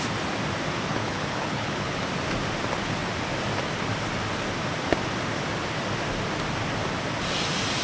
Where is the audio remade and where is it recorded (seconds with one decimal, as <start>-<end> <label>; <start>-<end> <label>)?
0.0-0.9 recorded; 0.9-2.0 remade; 2.0-7.8 recorded